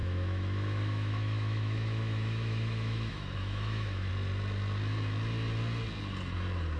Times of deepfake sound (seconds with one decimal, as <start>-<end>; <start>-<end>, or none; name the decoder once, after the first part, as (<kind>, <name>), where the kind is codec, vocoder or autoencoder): 0.0-4.1 (autoencoder, DAC-VAE)